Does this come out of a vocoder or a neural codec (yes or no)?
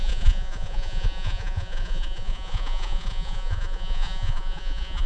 yes